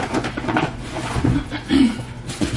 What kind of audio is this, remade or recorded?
remade